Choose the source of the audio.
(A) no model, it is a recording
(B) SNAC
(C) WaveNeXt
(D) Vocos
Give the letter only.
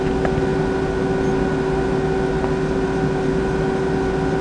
A